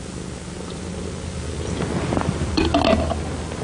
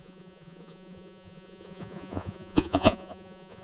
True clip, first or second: first